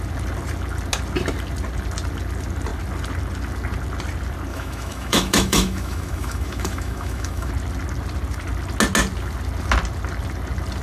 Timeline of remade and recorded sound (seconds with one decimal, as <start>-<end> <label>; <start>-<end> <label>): 0.0-4.5 recorded; 4.5-7.5 remade; 7.5-10.8 recorded